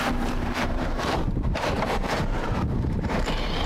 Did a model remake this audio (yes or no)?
yes